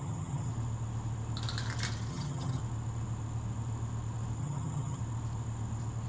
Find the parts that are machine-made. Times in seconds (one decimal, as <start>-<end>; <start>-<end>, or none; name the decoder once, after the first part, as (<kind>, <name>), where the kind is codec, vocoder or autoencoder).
0.0-0.5 (vocoder, HiFi-GAN); 2.1-2.6; 4.4-5.0